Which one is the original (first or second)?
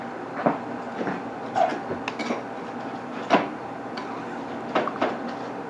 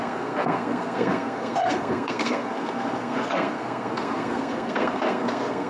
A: first